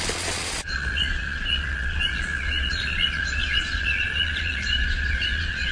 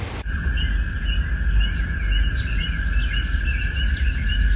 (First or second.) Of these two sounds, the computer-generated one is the first